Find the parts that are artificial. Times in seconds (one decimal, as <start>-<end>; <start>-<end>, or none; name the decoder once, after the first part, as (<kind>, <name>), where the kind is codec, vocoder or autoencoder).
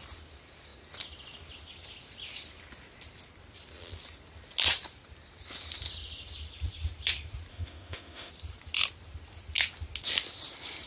7.5-8.3 (autoencoder, DAC-VAE)